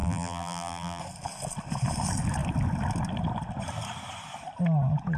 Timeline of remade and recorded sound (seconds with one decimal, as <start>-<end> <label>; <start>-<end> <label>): 0.0-1.0 remade; 1.0-5.2 recorded